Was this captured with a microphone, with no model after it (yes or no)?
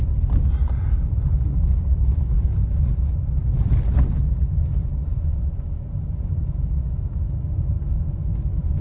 yes